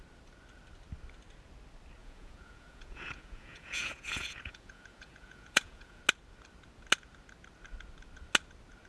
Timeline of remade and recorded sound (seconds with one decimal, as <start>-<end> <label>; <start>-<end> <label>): 0.0-2.0 recorded; 2.0-6.0 remade; 6.0-8.9 recorded